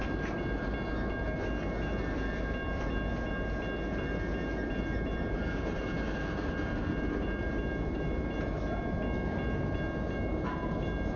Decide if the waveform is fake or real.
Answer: real